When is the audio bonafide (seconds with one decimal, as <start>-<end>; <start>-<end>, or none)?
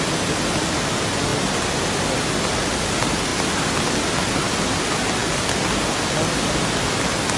0.0-3.3; 4.4-7.4